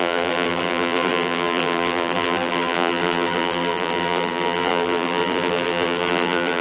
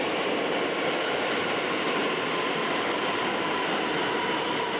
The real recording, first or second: second